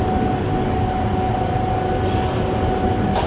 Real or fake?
real